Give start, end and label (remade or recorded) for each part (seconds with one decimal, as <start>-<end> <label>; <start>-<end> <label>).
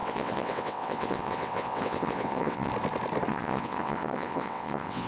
0.0-2.7 remade; 2.7-3.3 recorded; 3.3-5.1 remade